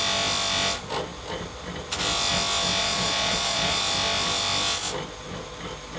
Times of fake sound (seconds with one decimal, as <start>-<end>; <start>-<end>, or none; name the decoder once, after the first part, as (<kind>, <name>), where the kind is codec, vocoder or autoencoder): 2.8-3.8 (vocoder, Vocos)